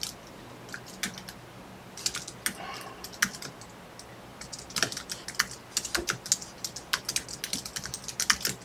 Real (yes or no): yes